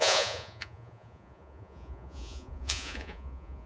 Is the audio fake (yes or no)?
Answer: yes